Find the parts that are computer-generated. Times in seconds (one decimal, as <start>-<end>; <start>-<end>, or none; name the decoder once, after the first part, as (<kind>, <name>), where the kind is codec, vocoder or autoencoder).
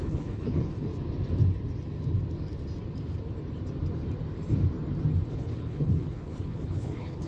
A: 0.0-0.9 (codec, HILCodec); 5.3-7.3